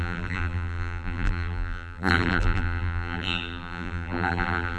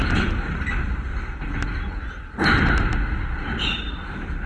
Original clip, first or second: second